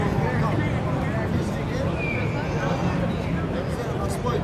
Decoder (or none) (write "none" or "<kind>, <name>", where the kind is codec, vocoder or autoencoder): none